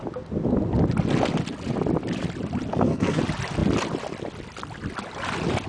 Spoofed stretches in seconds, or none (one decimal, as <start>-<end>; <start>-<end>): 2.7-3.2